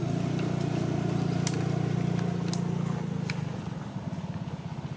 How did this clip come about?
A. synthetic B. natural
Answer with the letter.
B